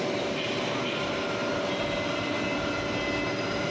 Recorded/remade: recorded